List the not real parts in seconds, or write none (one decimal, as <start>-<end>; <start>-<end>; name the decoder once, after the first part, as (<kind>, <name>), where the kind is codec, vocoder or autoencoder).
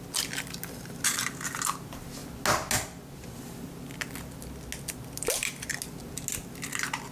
none